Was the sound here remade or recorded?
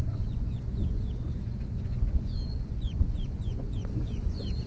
remade